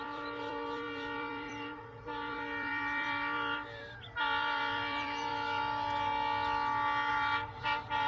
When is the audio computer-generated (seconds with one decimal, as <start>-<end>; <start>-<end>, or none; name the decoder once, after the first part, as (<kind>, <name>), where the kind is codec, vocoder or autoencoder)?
0.0-5.3 (vocoder, BigVGAN v2); 7.1-8.1